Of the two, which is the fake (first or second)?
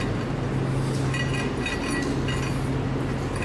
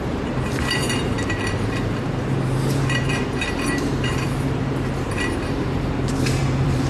second